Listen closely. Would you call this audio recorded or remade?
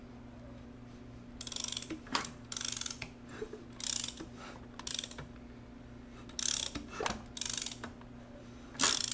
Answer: recorded